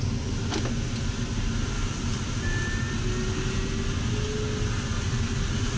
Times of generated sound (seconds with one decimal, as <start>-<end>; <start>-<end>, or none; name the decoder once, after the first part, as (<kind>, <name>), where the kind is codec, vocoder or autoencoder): none